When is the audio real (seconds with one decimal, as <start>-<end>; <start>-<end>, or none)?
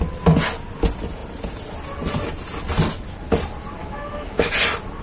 0.0-3.8; 4.5-5.0